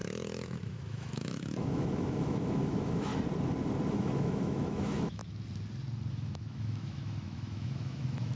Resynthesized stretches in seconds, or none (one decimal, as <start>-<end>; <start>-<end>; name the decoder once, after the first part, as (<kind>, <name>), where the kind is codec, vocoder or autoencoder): 0.0-3.1 (autoencoder, DAC-VAE); 3.9-5.2; 6.1-8.4